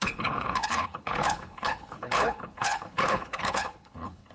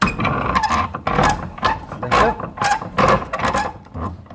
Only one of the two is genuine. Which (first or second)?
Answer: second